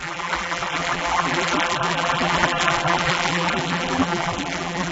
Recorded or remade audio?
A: remade